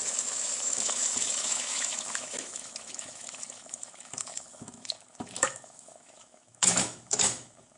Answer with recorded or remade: remade